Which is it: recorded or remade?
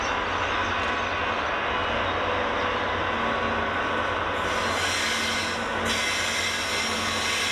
recorded